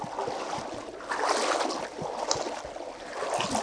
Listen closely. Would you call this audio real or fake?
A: real